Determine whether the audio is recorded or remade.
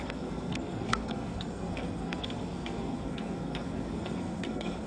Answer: remade